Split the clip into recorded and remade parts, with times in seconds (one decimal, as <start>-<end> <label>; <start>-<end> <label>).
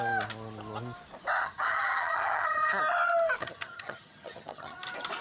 0.0-1.4 recorded; 1.4-2.8 remade; 2.8-3.4 recorded; 3.4-4.8 remade; 4.8-5.2 recorded